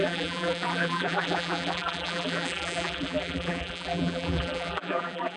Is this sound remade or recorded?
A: remade